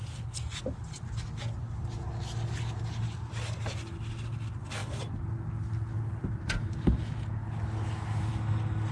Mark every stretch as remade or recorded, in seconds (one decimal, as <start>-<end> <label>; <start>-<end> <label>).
0.0-8.9 recorded